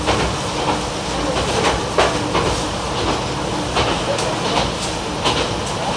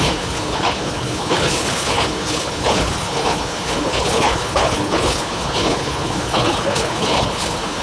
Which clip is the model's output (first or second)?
second